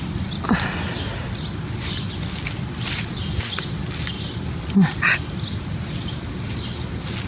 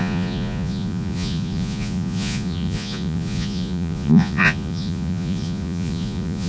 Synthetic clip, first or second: second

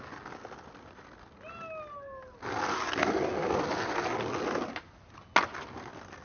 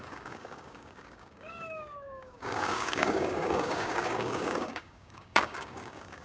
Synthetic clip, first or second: second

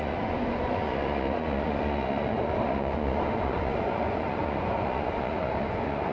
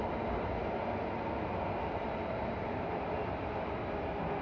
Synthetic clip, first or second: first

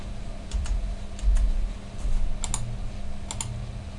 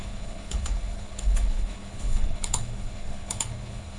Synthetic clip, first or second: second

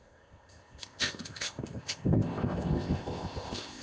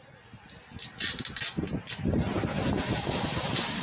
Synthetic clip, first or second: first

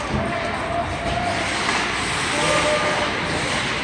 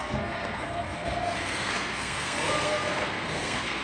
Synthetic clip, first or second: second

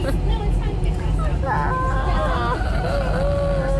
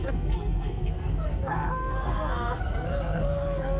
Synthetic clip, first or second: second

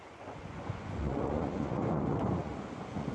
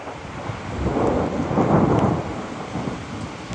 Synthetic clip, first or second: first